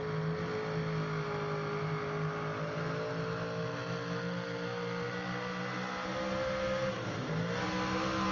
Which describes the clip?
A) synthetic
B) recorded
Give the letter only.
B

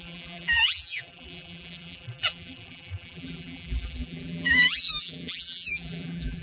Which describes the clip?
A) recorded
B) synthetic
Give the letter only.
B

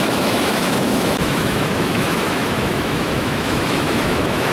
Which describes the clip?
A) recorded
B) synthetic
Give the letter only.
B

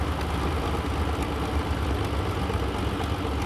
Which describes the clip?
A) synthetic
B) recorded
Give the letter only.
B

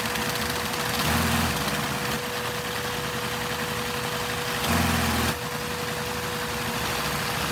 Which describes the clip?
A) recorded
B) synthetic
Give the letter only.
A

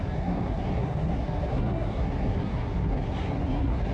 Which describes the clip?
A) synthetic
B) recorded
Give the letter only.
A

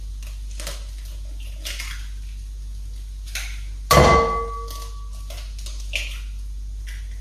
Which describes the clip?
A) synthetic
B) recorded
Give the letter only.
B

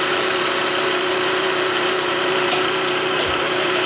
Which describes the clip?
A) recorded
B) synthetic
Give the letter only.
B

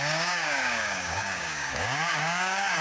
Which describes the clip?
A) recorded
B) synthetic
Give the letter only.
B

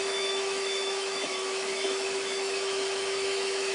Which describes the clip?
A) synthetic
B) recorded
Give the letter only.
A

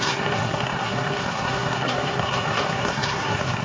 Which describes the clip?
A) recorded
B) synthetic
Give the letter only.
B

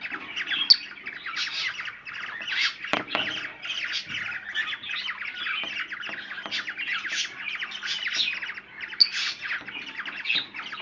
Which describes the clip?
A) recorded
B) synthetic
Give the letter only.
A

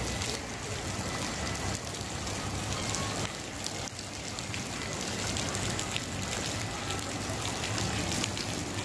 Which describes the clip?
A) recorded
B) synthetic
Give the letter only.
A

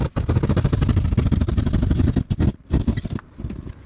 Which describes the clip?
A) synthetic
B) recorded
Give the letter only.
B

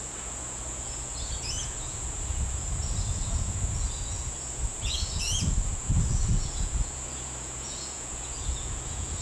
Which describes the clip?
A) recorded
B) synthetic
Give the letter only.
B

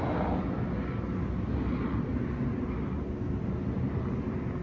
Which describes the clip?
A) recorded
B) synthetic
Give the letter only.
A